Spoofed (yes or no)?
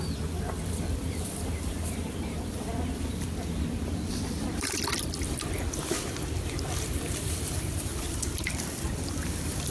yes